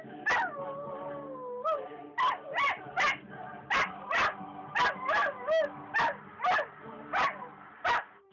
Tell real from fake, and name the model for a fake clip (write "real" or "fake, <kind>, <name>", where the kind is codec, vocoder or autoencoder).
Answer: real